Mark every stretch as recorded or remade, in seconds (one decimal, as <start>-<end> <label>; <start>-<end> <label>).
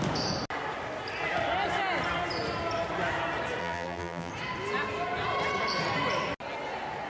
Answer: 0.0-3.6 recorded; 3.6-4.3 remade; 4.3-7.1 recorded